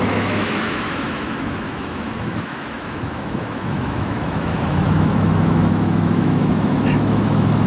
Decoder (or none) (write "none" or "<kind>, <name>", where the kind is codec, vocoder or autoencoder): autoencoder, DAC-VAE